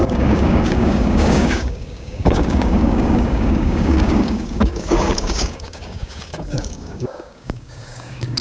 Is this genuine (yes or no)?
no